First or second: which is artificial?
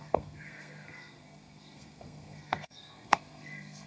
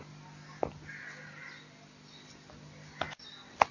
first